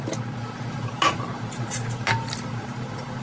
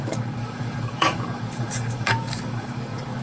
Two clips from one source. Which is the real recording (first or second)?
first